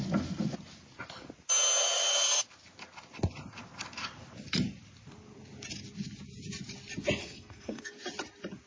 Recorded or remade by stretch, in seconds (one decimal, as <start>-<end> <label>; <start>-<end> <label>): 0.0-7.2 recorded; 7.2-7.9 remade; 7.9-8.7 recorded